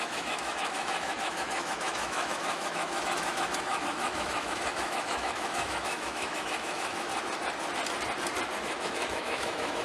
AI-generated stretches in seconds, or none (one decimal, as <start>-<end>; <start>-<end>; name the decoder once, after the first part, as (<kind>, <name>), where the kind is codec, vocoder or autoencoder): 0.0-7.1 (autoencoder, DAC-VAE); 8.6-9.8